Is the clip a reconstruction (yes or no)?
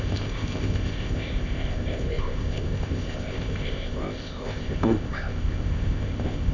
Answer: yes